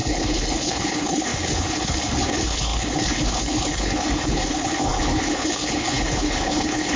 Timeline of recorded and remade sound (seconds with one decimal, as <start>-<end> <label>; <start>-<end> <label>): 0.0-7.0 remade